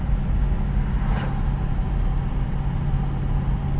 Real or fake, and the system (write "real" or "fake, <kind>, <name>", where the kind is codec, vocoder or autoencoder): real